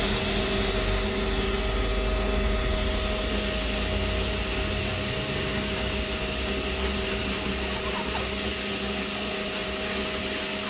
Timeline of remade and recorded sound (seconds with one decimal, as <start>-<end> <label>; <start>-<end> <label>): 0.0-10.7 recorded